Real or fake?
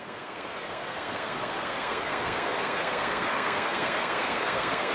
fake